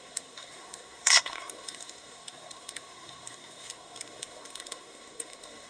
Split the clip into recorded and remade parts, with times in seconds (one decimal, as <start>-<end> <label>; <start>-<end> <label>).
0.0-5.7 remade